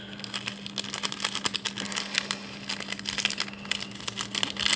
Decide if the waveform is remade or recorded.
recorded